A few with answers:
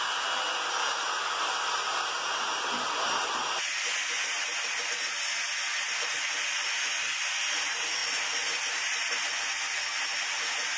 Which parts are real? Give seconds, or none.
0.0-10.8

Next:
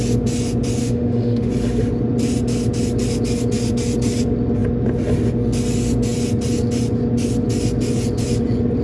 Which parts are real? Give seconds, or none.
0.0-0.8; 1.5-8.8

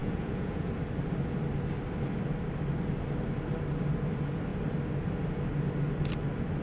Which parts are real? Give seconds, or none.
0.7-6.6

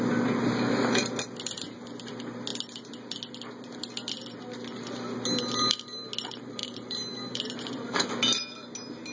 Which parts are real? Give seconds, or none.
0.0-6.6; 8.1-9.1

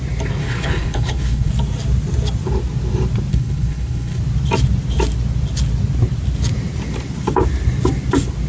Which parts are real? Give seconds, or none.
0.0-0.4; 1.5-3.3; 4.2-8.5

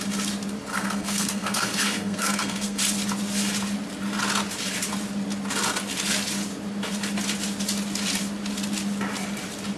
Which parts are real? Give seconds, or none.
0.0-0.7; 2.8-9.8